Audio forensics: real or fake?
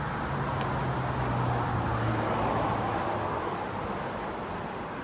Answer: real